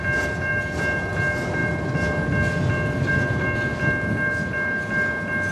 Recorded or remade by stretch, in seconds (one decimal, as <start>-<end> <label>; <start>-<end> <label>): 0.0-5.5 recorded